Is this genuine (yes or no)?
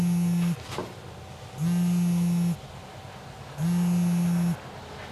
yes